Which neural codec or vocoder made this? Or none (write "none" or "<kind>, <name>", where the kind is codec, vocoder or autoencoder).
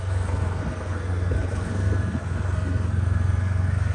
codec, SNAC